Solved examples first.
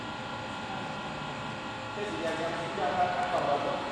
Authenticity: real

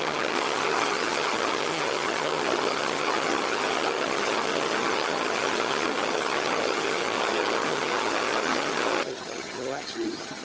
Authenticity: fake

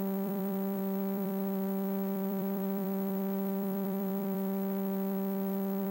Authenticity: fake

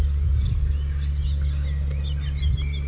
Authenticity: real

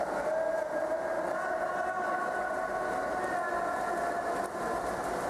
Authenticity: real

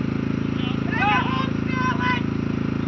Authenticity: real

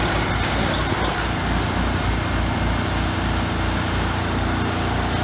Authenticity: real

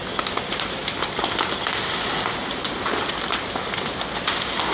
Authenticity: real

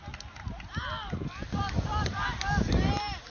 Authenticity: real